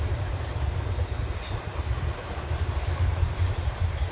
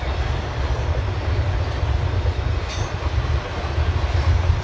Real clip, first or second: second